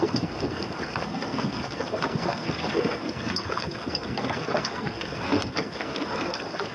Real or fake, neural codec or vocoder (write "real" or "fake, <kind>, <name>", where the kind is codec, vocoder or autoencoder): fake, codec, SNAC